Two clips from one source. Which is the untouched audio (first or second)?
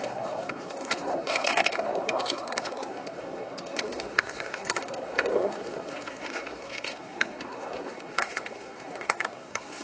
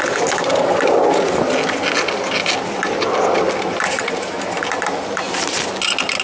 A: second